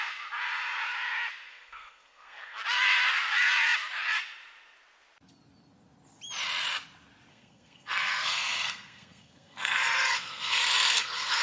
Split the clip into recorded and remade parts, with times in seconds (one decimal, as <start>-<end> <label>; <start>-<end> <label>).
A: 0.0-1.5 recorded; 1.5-2.6 remade; 2.6-7.3 recorded; 7.3-11.4 remade